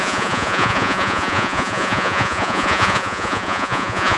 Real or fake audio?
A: fake